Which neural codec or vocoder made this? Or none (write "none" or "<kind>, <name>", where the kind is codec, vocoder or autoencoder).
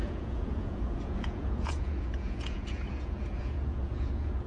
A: vocoder, Vocos